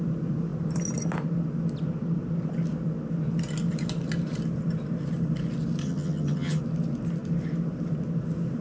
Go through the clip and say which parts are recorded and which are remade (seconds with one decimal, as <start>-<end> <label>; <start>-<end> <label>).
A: 0.0-5.8 recorded; 5.8-6.6 remade; 6.6-8.6 recorded

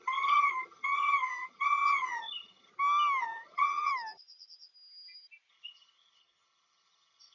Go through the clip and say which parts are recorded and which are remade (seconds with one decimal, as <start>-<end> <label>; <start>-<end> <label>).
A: 0.0-2.7 remade; 2.7-3.2 recorded; 3.2-3.9 remade; 3.9-5.5 recorded; 5.5-7.3 remade

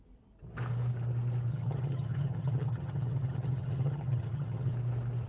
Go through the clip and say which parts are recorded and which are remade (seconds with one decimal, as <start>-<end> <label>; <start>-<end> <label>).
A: 0.0-1.5 recorded; 1.5-4.7 remade; 4.7-5.3 recorded

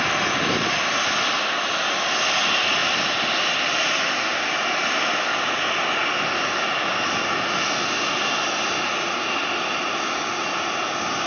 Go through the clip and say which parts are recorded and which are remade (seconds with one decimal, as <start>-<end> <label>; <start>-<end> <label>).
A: 0.0-11.3 recorded

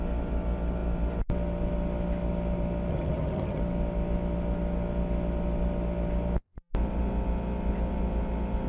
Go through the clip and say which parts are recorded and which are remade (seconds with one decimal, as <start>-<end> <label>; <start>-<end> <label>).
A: 0.0-2.9 recorded; 2.9-3.6 remade; 3.6-8.7 recorded

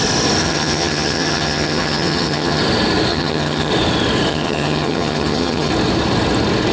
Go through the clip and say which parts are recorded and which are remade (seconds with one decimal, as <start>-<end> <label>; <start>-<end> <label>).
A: 0.0-0.4 recorded; 0.4-2.6 remade; 2.6-3.1 recorded; 3.1-3.7 remade; 3.7-4.3 recorded; 4.3-5.7 remade; 5.7-6.7 recorded